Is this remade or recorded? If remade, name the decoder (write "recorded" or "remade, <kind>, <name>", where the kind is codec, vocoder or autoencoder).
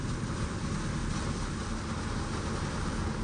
recorded